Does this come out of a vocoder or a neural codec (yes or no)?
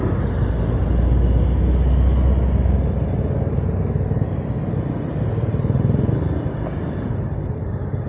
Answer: no